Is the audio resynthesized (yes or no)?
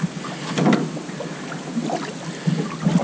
no